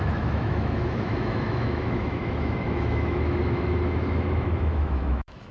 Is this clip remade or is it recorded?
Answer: remade